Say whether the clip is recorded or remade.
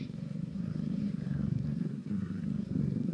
remade